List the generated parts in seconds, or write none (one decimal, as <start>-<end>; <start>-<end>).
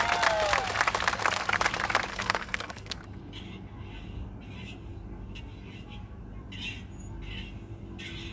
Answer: 2.1-3.0